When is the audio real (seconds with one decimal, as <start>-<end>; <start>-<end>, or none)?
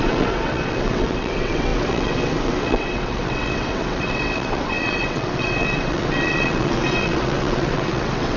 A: none